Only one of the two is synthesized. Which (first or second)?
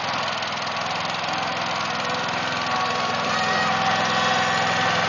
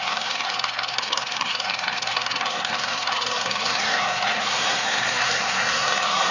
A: second